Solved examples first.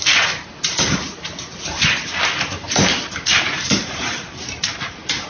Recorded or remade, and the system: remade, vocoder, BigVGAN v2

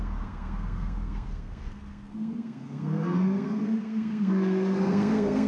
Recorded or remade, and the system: remade, codec, SNAC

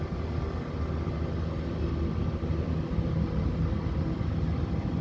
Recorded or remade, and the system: recorded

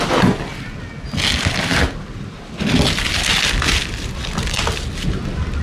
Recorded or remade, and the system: recorded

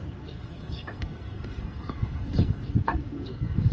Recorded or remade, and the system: remade, codec, SNAC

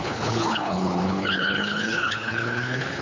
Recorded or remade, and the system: remade, codec, HILCodec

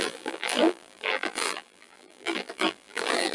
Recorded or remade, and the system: remade, vocoder, BigVGAN v2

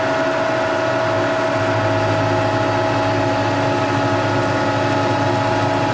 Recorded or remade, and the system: recorded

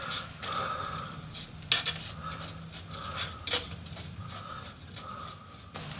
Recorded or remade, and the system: recorded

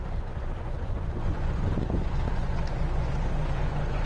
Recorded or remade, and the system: remade, vocoder, Vocos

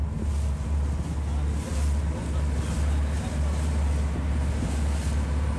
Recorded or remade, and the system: recorded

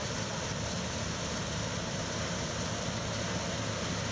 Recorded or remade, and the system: recorded